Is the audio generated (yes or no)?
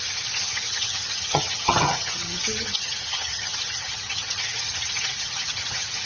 yes